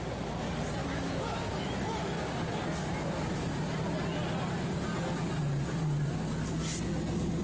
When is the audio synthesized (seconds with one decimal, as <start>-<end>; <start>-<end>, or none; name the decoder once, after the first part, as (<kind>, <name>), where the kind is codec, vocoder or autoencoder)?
0.8-1.8 (autoencoder, DAC-VAE)